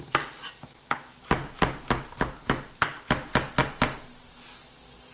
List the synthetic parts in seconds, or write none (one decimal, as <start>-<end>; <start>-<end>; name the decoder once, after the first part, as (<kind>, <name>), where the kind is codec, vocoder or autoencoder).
none